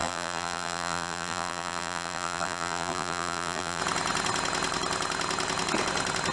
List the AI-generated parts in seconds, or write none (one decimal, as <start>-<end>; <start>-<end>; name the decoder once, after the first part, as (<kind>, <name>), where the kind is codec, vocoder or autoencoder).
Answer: 0.0-3.8 (vocoder, BigVGAN v2)